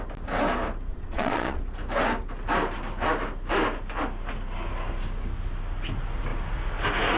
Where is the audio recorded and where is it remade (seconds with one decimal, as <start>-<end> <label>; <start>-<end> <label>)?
0.0-0.9 recorded; 0.9-1.6 remade; 1.6-7.2 recorded